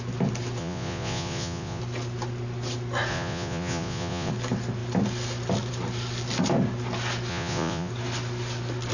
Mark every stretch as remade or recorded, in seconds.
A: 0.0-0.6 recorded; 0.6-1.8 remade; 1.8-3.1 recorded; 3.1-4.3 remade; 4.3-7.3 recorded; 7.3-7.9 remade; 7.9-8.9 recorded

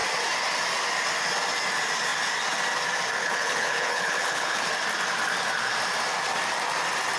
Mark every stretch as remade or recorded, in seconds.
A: 0.0-3.2 recorded; 3.2-4.7 remade; 4.7-7.2 recorded

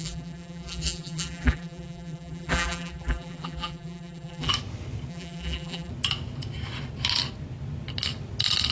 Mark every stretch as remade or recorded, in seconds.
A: 0.0-4.5 remade; 4.5-5.1 recorded; 5.1-5.9 remade; 5.9-8.7 recorded

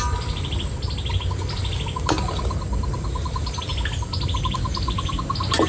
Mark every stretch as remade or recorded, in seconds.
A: 0.0-5.7 recorded

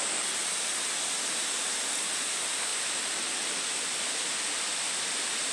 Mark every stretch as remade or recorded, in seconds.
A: 0.0-5.5 recorded

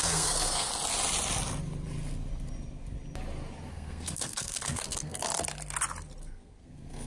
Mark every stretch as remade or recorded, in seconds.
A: 0.0-0.7 remade; 0.7-3.7 recorded; 3.7-5.3 remade; 5.3-6.2 recorded; 6.2-7.1 remade

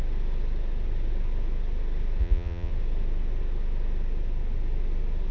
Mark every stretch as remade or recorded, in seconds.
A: 0.0-2.2 recorded; 2.2-2.7 remade; 2.7-5.3 recorded